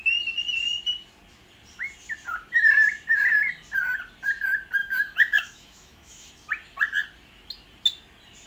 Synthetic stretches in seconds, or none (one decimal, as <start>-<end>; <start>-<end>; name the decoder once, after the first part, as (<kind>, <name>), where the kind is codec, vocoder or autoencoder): 4.8-6.3 (autoencoder, DAC-VAE)